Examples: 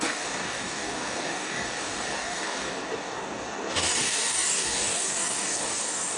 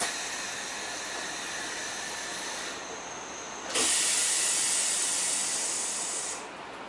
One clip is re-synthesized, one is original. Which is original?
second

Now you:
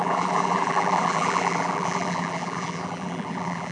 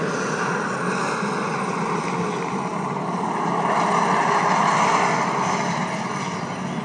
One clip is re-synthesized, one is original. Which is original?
second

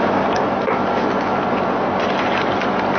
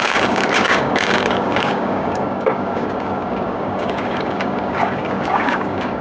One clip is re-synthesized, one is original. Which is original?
first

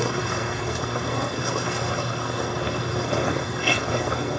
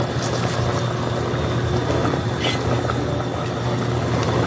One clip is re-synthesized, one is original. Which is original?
second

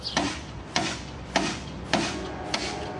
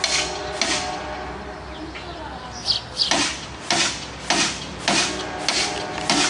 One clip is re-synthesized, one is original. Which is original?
second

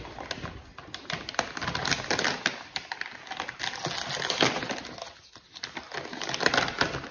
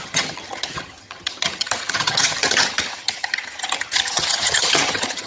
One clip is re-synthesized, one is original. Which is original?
first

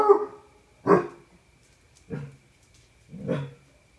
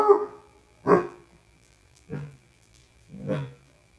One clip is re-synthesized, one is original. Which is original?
first